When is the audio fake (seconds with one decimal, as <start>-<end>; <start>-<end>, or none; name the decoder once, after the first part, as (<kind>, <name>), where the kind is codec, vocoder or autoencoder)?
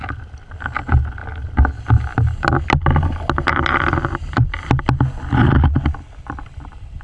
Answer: 4.2-4.7 (vocoder, BigVGAN v2)